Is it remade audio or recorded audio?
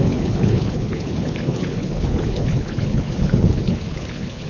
remade